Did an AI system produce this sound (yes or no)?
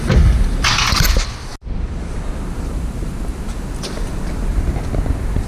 no